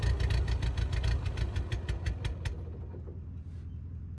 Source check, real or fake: real